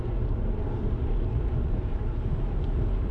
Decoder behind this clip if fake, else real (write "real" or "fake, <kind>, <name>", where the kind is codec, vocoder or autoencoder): real